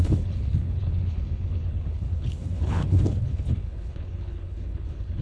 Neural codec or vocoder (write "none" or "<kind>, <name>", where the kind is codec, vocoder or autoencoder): codec, HILCodec